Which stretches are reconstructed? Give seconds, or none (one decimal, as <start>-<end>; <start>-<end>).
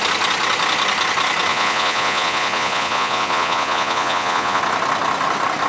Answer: 1.5-4.6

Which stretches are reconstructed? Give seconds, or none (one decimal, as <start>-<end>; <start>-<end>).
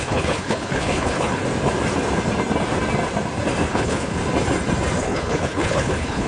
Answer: 0.0-1.4; 3.7-4.2; 5.0-6.3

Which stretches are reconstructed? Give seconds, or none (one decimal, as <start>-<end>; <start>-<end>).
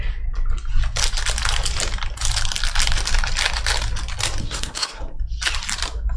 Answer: 4.4-5.2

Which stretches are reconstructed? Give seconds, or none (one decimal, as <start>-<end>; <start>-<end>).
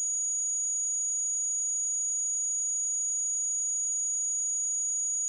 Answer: none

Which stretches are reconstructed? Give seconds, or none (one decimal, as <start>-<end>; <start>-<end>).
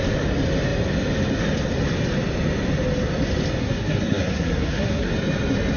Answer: 3.6-5.1